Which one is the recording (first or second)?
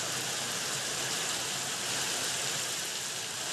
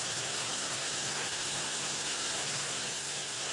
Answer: first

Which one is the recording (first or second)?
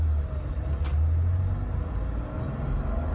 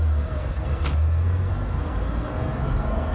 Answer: first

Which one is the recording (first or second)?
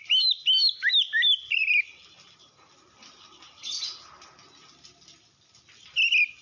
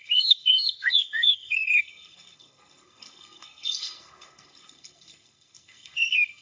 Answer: first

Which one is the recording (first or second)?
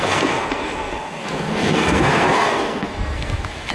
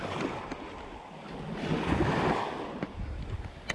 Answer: second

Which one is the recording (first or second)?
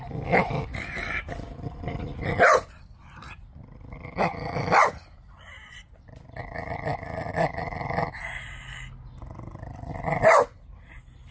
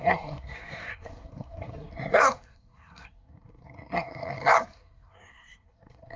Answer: first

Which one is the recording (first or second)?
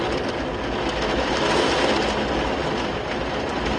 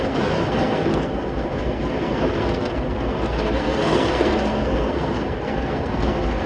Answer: first